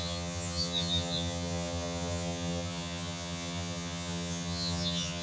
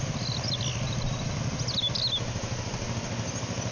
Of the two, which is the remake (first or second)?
first